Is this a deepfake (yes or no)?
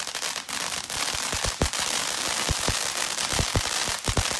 no